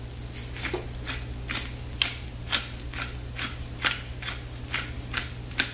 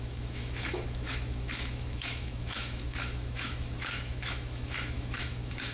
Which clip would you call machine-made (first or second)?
second